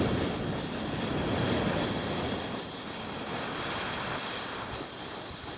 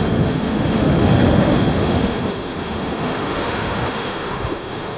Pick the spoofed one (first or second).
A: second